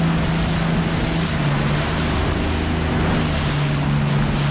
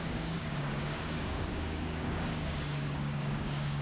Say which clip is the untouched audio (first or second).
first